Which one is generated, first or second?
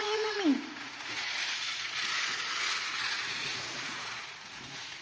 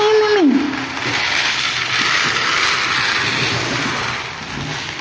first